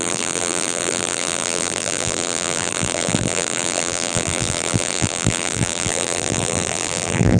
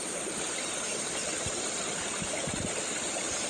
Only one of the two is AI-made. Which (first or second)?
first